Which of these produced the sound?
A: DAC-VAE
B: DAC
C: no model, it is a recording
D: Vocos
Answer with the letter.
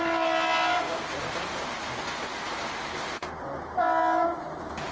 C